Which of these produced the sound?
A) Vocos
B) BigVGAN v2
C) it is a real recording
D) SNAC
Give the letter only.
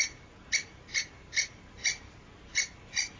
C